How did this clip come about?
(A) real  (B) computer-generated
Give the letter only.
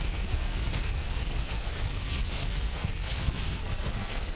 B